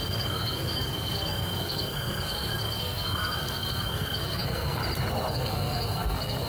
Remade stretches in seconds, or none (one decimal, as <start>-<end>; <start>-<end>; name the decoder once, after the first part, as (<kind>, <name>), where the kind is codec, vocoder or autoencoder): 0.0-4.8 (codec, SNAC); 5.3-6.5